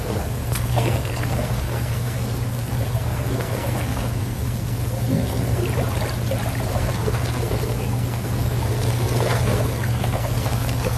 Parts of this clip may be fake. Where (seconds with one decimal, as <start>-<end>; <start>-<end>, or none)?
0.0-5.6; 6.7-11.0